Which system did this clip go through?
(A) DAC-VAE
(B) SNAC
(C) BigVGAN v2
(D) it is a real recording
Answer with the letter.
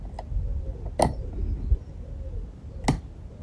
D